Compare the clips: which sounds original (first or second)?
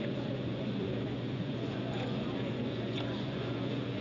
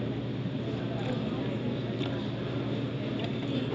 second